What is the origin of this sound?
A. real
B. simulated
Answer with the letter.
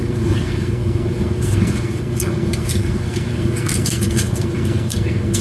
B